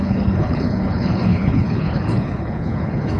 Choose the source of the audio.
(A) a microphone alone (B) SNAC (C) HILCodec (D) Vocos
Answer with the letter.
C